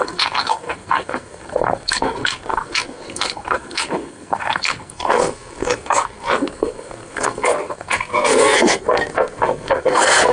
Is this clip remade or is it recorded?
remade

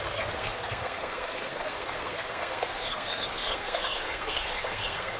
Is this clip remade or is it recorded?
remade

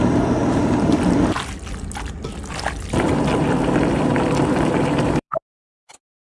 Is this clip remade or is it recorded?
remade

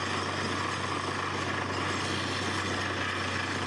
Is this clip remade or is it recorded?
recorded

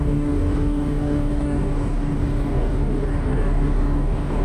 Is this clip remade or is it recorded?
remade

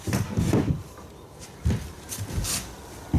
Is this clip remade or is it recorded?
recorded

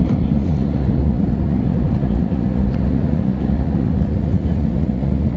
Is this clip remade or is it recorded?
remade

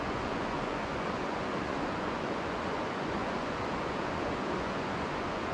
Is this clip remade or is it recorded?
remade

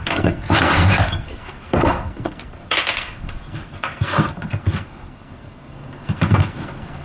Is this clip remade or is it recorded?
remade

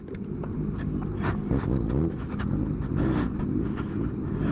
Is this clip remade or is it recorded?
recorded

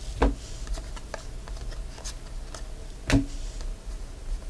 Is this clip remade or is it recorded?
recorded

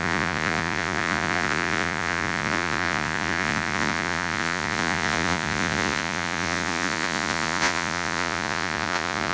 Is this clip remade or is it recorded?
remade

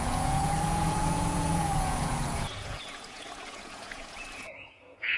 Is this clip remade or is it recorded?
remade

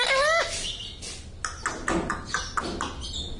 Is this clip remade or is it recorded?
recorded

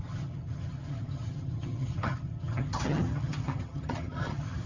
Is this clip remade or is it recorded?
remade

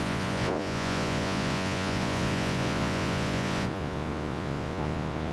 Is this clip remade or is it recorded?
remade